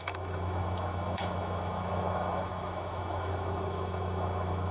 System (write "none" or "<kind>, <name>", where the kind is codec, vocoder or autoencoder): autoencoder, DAC-VAE